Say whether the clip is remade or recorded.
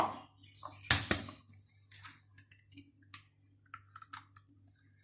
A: recorded